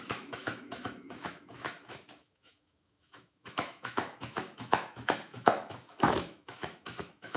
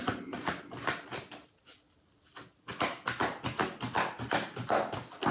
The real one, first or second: second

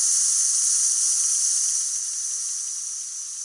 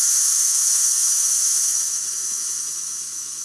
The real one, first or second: first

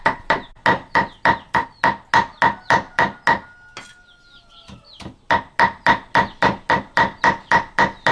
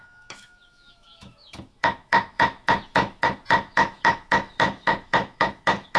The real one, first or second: first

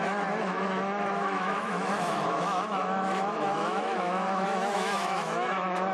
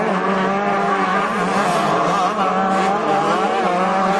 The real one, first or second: second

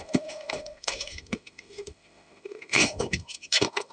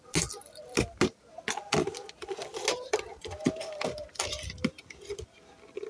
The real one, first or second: second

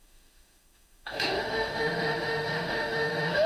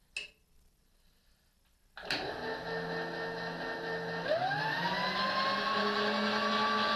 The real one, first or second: second